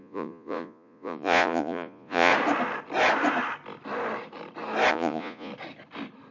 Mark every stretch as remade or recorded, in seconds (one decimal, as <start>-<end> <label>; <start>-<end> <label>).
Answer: 0.0-2.3 remade; 2.3-4.9 recorded; 4.9-5.5 remade; 5.5-6.3 recorded